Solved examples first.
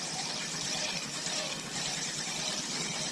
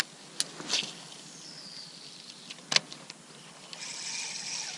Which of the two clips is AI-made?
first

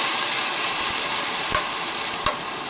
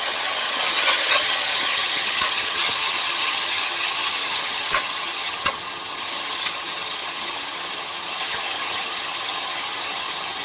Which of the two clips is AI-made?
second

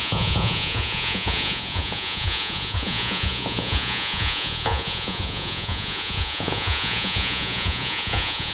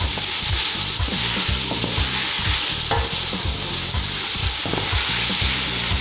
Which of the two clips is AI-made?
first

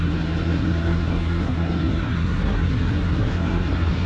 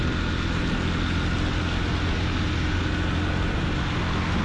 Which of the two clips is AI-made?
first